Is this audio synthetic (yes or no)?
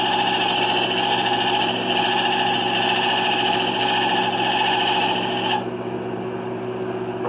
no